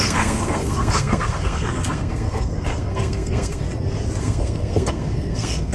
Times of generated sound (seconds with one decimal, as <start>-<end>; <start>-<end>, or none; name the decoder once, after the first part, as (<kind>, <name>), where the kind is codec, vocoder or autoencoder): 0.0-3.6 (codec, SNAC); 4.2-5.7